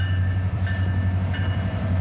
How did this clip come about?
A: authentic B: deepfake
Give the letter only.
B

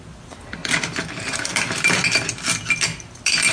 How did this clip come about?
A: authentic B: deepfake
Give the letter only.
A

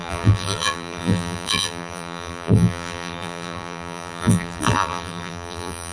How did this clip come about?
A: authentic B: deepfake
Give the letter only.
B